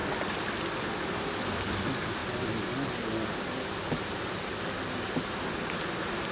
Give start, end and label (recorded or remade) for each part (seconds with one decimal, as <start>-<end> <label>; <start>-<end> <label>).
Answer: 0.0-2.2 recorded; 2.2-4.9 remade; 4.9-6.3 recorded